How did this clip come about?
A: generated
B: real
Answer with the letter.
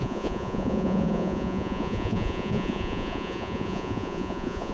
A